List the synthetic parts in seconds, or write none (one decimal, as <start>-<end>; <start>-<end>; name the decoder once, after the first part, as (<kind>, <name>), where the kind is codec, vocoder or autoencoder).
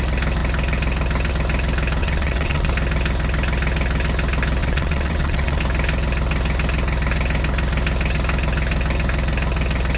2.0-2.7 (vocoder, WaveNeXt); 4.6-5.6